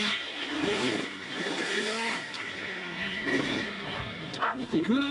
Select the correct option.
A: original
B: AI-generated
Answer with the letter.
B